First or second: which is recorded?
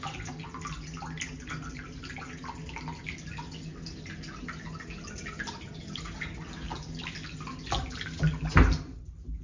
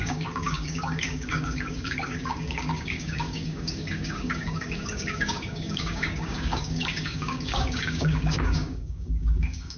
first